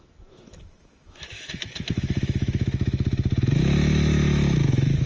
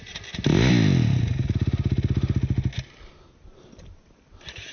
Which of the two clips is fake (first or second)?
first